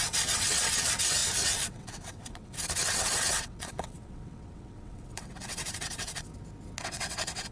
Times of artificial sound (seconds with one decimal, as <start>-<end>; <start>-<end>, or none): 0.0-6.3; 6.8-7.5